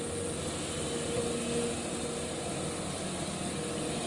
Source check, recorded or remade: recorded